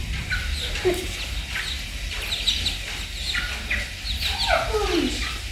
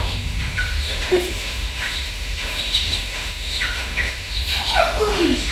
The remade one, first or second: second